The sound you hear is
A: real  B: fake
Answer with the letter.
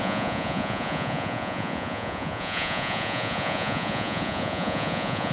B